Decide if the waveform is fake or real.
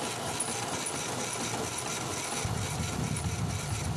real